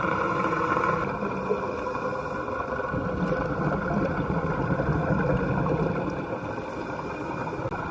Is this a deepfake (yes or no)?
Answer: no